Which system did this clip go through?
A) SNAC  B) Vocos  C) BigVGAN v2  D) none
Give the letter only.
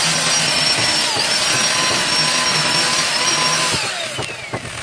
D